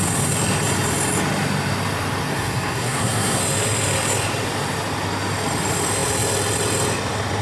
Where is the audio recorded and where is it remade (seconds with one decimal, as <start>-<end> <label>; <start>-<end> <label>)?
0.0-2.3 recorded; 2.3-3.4 remade; 3.4-7.4 recorded

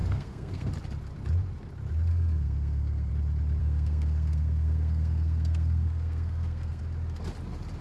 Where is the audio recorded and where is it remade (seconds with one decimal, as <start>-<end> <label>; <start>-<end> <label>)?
0.0-0.7 remade; 0.7-2.1 recorded; 2.1-3.1 remade; 3.1-3.6 recorded; 3.6-6.8 remade; 6.8-7.8 recorded

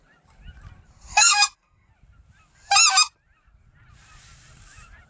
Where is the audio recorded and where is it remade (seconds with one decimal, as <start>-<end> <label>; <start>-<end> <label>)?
0.0-1.1 recorded; 1.1-1.9 remade; 1.9-5.1 recorded

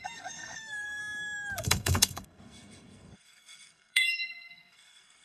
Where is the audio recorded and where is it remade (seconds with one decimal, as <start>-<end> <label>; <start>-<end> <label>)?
0.0-1.0 remade; 1.0-1.6 recorded; 1.6-5.2 remade

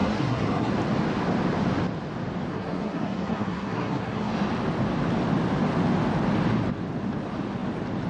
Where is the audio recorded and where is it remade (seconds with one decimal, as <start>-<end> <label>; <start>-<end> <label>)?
0.0-0.7 remade; 0.7-2.5 recorded; 2.5-4.3 remade; 4.3-8.1 recorded

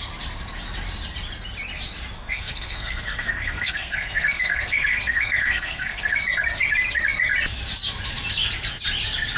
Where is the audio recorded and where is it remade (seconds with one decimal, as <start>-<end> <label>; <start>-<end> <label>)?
0.0-2.2 recorded; 2.2-6.1 remade; 6.1-9.4 recorded

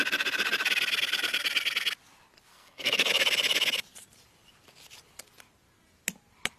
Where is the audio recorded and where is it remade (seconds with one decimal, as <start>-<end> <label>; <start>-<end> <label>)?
0.0-2.5 recorded; 2.5-3.1 remade; 3.1-6.6 recorded

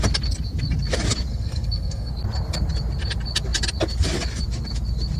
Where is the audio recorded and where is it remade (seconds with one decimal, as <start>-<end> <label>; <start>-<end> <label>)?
0.0-1.3 recorded; 1.3-2.1 remade; 2.1-5.2 recorded